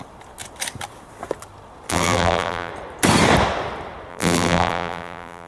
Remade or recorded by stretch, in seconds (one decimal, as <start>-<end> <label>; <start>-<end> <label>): 0.0-1.9 recorded; 1.9-2.7 remade; 2.7-4.1 recorded; 4.1-5.5 remade